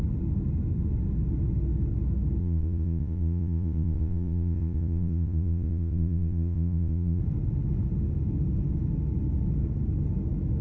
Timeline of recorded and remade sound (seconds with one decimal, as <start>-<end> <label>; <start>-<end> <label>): 0.0-2.4 recorded; 2.4-7.2 remade; 7.2-10.6 recorded